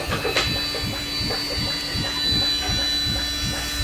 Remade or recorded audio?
recorded